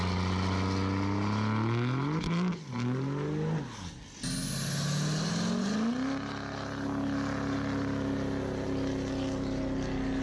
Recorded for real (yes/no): yes